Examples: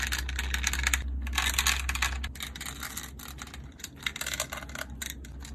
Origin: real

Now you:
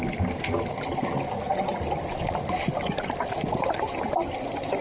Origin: real